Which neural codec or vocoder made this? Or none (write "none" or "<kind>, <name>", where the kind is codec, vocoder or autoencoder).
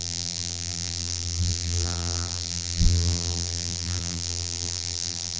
vocoder, BigVGAN v2